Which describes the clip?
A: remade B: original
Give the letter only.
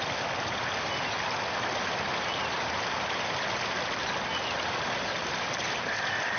B